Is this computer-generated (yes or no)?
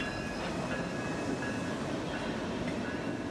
no